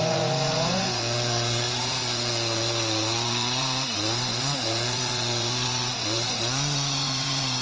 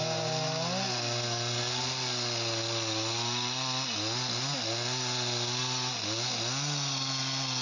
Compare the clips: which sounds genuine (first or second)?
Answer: second